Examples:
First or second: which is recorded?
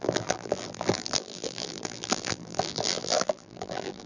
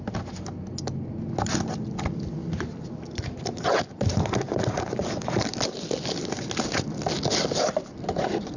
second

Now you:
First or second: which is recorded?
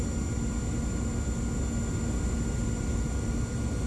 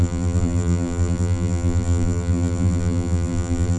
first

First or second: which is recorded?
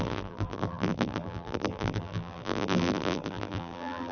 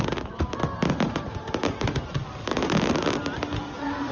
second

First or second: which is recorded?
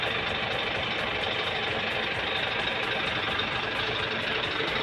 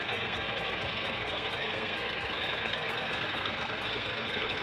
first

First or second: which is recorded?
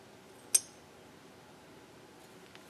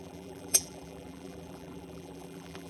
first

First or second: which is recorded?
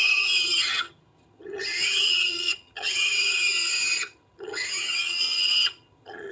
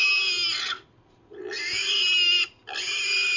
second